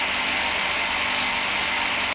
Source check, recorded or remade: recorded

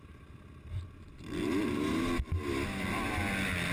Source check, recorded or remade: recorded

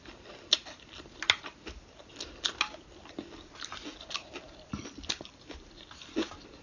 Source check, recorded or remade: recorded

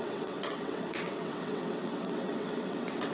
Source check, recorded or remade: remade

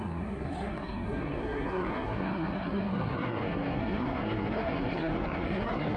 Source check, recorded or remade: remade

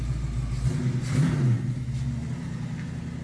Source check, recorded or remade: recorded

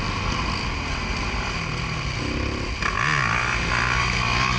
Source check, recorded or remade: recorded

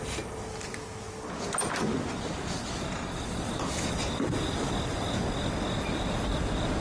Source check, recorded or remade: recorded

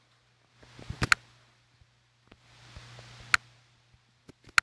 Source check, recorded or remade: recorded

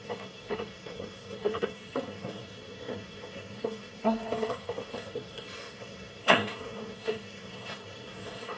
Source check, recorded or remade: remade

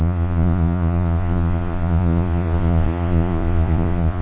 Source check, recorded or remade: remade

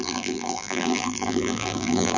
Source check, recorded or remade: remade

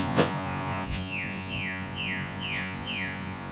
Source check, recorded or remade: remade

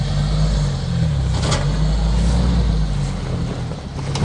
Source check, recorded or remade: recorded